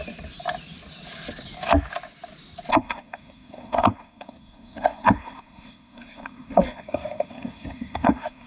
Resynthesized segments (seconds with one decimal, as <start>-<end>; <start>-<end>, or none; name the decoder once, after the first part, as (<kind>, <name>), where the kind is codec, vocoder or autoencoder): 2.7-8.5 (codec, SNAC)

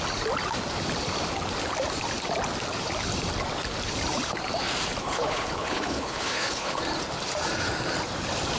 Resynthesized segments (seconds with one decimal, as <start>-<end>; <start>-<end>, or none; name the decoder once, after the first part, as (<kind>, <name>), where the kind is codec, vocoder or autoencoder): 5.0-6.8 (codec, HILCodec)

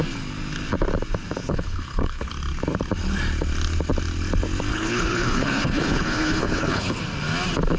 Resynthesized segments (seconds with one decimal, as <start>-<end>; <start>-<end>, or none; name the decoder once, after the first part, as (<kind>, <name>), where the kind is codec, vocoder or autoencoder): 1.4-2.3 (codec, HILCodec); 4.7-7.0

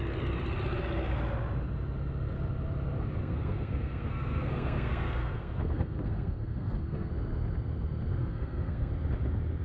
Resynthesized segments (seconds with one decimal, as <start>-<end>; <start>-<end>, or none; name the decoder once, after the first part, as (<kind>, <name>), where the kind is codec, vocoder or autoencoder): 3.2-7.1 (codec, SNAC); 8.2-8.9